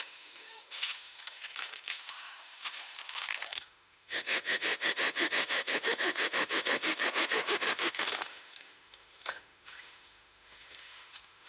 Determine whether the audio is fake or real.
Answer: fake